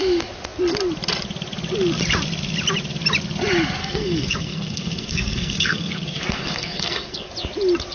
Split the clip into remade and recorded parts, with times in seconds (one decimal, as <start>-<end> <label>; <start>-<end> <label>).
0.0-3.8 recorded; 3.8-7.3 remade; 7.3-7.9 recorded